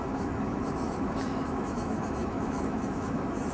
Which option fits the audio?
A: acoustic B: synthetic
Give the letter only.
B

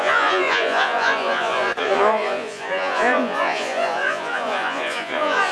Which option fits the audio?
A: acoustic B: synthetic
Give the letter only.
B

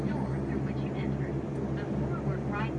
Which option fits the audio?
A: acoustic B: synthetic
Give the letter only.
A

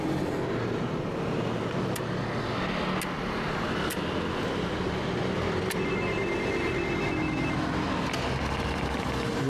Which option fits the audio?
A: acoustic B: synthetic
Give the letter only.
A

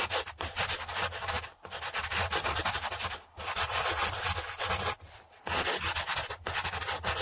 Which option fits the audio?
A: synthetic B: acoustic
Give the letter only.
B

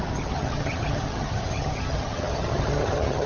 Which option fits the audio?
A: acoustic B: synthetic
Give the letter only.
B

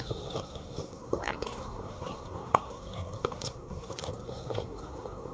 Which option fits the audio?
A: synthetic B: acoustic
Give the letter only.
A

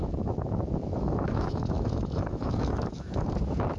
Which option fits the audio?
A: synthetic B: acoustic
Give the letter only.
A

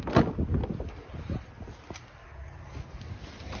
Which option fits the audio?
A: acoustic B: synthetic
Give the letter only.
A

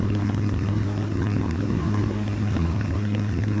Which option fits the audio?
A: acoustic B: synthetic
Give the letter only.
B